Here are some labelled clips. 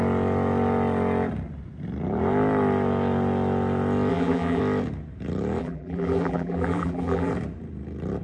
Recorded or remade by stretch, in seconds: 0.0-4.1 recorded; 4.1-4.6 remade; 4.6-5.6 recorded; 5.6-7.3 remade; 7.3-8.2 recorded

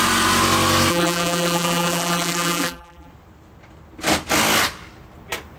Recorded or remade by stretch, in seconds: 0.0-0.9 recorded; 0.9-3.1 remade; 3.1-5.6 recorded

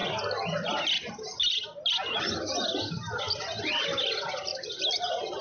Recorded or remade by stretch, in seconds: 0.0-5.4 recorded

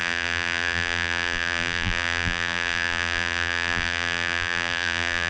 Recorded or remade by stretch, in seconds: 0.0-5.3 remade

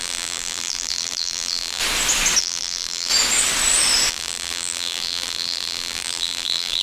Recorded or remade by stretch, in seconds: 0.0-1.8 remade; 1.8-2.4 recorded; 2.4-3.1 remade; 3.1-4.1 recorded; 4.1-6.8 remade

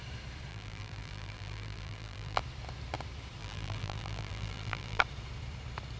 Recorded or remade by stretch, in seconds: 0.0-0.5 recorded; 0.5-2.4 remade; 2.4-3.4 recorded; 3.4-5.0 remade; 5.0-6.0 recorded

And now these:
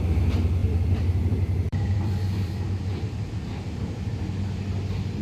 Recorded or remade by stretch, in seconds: 0.0-0.6 recorded; 0.6-3.3 remade; 3.3-5.2 recorded